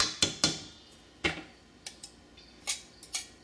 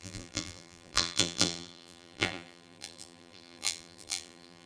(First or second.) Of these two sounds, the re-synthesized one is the second